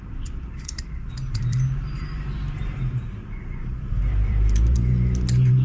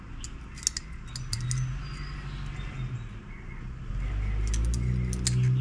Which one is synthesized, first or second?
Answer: first